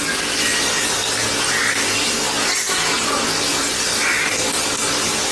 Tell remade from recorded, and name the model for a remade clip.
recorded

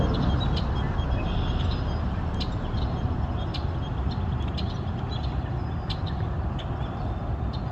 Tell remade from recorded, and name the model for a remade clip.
recorded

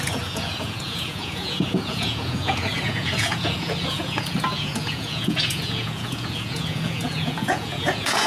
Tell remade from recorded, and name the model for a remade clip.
remade, vocoder, Vocos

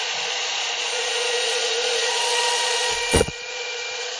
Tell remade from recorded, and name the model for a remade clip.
remade, vocoder, Vocos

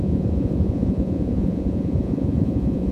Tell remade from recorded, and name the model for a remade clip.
remade, vocoder, Vocos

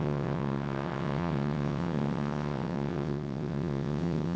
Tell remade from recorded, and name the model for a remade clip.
remade, vocoder, WaveNeXt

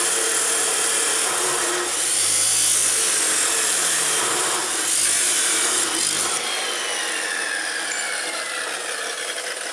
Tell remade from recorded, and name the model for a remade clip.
remade, vocoder, BigVGAN v2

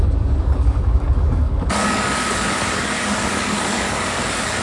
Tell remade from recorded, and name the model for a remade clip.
remade, codec, DAC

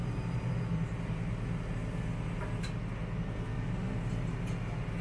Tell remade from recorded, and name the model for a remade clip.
recorded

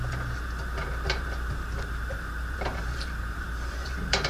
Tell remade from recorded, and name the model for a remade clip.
remade, vocoder, BigVGAN v2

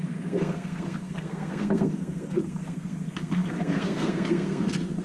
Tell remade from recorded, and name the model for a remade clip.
remade, codec, SNAC